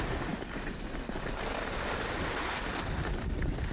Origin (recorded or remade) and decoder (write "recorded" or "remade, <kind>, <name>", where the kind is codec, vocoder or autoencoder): recorded